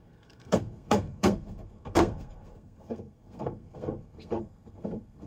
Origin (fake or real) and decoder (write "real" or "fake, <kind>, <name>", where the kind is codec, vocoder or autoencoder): fake, codec, SNAC